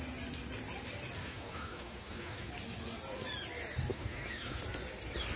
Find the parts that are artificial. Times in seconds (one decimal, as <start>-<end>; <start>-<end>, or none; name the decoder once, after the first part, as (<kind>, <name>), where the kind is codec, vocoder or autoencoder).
1.2-2.5 (autoencoder, DAC-VAE); 3.9-4.6